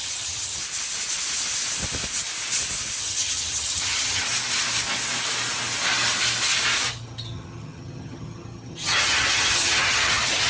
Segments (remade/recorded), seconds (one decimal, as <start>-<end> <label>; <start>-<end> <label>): 0.0-0.6 remade; 0.6-3.0 recorded; 3.0-4.2 remade; 4.2-6.9 recorded; 6.9-10.5 remade